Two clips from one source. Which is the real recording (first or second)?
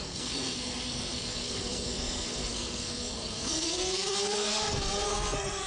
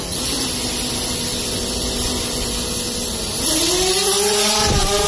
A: second